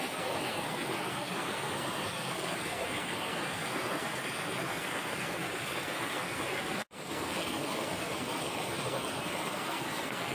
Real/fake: fake